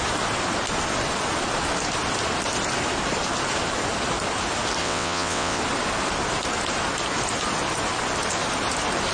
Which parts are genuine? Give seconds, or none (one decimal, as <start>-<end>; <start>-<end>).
0.0-4.8; 5.6-9.1